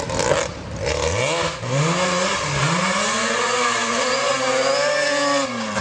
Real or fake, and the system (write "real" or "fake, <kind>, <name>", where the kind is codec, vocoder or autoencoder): real